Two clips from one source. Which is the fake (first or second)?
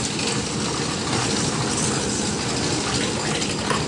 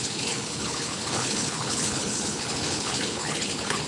second